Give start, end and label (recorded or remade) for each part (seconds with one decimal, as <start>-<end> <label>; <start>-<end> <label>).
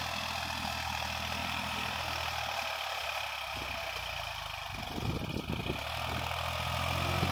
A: 0.0-1.4 recorded; 1.4-2.0 remade; 2.0-7.3 recorded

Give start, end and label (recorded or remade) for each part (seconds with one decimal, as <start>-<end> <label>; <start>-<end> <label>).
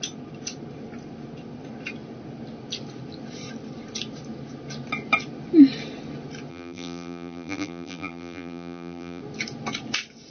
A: 0.0-6.5 recorded; 6.5-9.2 remade; 9.2-10.3 recorded